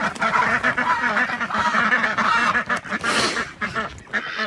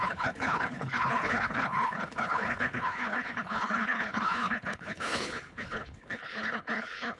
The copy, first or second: second